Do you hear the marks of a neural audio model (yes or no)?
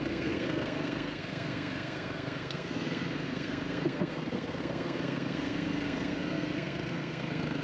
yes